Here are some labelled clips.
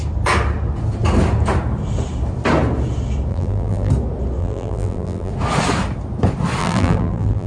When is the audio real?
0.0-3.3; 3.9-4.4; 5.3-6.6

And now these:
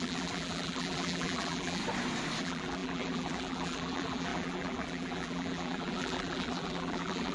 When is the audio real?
1.8-2.4

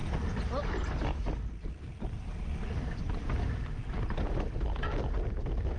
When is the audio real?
0.0-5.8